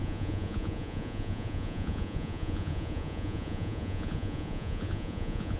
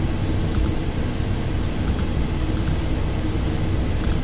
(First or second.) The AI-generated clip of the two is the first